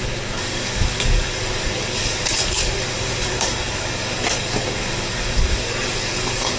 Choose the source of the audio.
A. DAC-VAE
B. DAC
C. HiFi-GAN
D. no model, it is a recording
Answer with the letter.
B